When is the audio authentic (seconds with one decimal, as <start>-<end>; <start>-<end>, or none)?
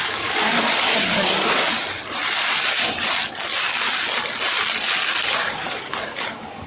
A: 1.6-5.2